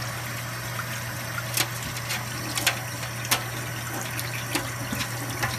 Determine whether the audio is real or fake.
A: real